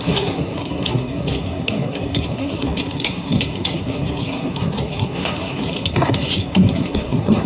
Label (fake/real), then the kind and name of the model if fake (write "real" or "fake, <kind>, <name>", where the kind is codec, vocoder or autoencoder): fake, codec, SNAC